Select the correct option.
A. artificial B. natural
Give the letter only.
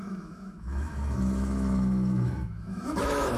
A